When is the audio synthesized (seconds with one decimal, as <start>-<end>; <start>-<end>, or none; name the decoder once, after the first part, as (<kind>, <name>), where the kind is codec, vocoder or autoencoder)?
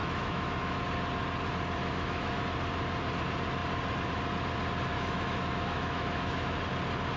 0.0-0.8 (autoencoder, DAC-VAE); 1.8-2.4; 4.9-6.6